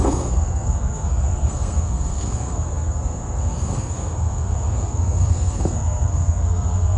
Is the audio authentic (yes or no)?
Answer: no